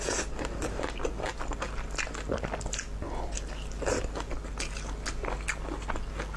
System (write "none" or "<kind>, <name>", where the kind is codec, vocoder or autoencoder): none